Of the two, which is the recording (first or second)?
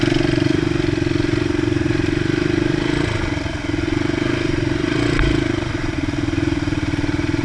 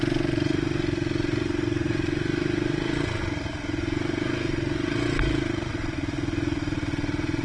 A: second